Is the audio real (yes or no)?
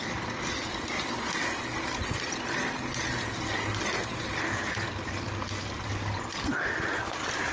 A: yes